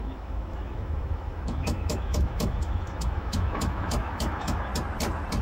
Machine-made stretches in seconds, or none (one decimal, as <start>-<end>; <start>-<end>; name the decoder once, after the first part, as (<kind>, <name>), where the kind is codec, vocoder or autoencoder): 0.0-4.7 (autoencoder, DAC-VAE)